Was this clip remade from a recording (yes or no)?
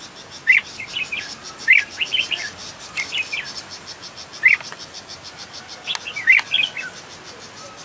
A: no